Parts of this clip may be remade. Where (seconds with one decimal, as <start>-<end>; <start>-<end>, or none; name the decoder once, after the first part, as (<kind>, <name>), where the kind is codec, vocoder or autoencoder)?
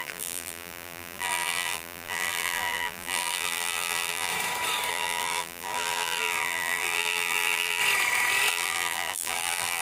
0.0-4.3 (vocoder, BigVGAN v2); 4.9-7.8; 8.5-9.8